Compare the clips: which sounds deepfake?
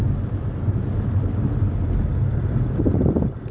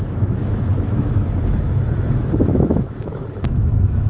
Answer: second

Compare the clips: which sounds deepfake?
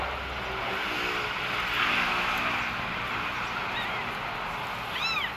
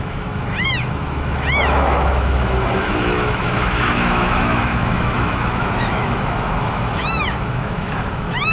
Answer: second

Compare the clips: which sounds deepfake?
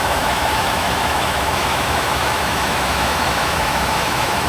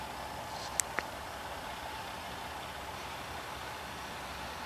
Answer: first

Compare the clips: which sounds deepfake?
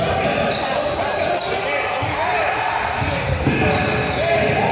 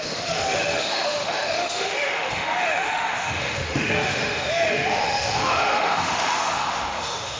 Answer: second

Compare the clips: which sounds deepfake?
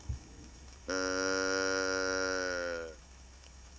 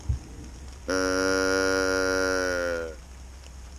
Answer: first